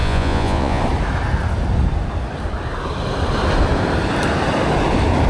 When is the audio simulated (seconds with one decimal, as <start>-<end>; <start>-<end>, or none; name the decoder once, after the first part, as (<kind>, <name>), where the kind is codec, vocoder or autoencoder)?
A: 0.0-0.8 (vocoder, Vocos)